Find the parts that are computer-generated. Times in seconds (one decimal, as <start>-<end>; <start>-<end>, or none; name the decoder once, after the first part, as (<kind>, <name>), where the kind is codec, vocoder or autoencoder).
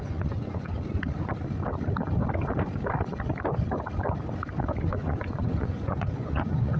0.0-0.7 (vocoder, Vocos); 4.8-6.8